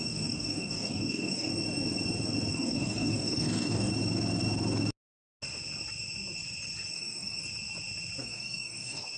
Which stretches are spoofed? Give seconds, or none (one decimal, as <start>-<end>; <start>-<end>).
0.0-1.5; 2.5-3.9; 6.9-7.4; 8.2-9.2